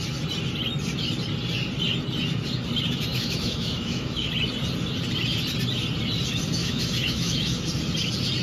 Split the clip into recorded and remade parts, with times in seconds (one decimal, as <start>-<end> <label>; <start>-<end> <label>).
0.0-3.1 recorded; 3.1-4.3 remade; 4.3-6.6 recorded; 6.6-7.6 remade; 7.6-8.4 recorded